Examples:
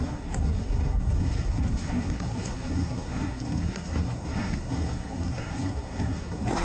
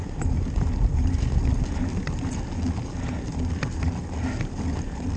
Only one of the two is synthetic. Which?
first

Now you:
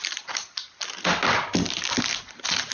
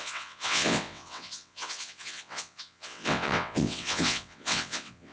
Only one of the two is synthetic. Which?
second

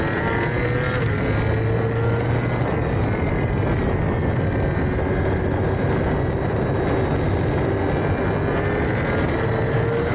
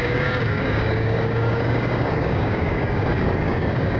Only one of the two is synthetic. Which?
second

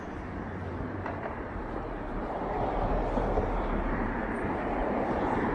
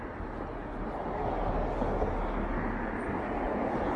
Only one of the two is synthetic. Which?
first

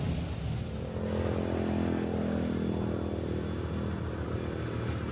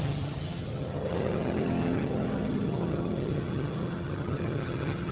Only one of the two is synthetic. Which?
second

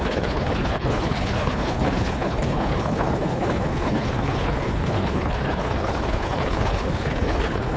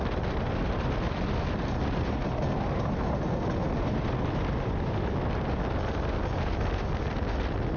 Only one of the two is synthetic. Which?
first